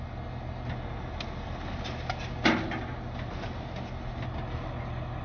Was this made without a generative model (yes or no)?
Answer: yes